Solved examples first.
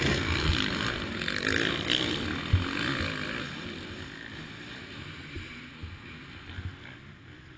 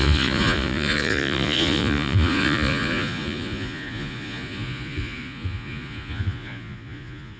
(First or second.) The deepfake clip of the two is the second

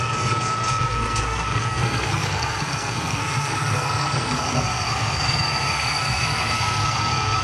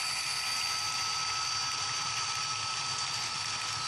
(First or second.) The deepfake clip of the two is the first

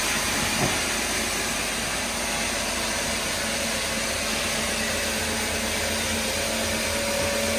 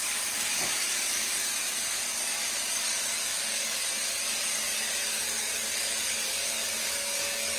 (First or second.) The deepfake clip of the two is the second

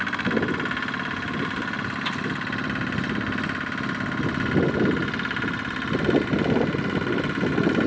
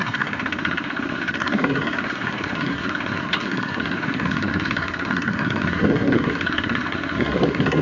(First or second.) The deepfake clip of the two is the second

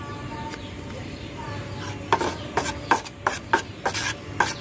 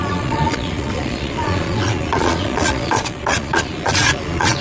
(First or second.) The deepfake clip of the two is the second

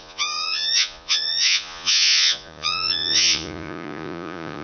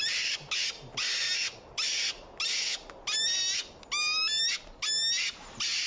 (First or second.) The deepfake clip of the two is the first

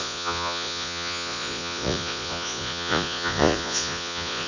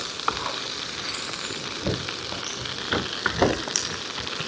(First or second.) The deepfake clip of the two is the first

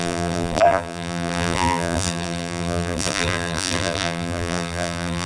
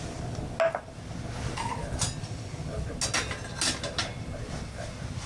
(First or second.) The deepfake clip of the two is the first